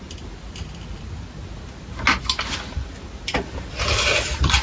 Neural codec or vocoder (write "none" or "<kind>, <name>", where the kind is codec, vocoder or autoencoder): none